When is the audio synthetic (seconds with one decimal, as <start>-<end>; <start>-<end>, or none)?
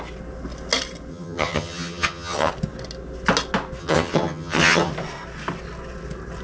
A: 1.1-2.5; 3.8-4.9